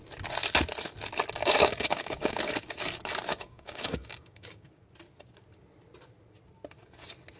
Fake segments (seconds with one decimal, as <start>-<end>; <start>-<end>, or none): 1.4-2.5; 3.3-4.7